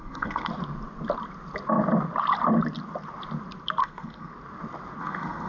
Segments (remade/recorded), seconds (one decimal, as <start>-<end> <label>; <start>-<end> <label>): 0.0-0.5 remade; 0.5-3.8 recorded; 3.8-4.3 remade; 4.3-5.0 recorded; 5.0-5.5 remade